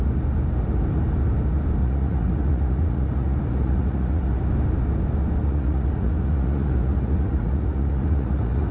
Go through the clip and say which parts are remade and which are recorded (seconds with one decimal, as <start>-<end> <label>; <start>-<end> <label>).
0.0-1.8 recorded; 1.8-4.4 remade; 4.4-5.4 recorded; 5.4-8.7 remade